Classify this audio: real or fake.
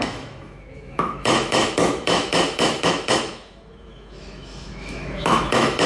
fake